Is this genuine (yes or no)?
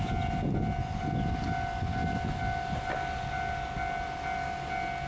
yes